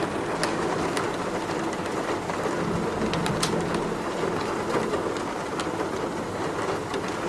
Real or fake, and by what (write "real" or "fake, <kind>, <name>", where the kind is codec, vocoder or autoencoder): real